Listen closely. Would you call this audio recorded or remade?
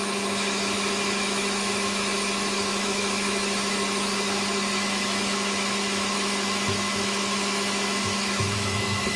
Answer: remade